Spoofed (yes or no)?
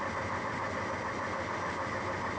no